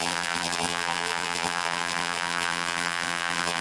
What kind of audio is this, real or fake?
fake